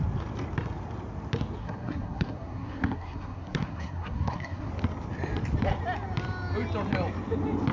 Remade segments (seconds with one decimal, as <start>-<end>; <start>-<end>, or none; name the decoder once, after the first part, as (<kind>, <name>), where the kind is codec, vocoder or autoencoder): 1.6-4.7 (codec, SNAC)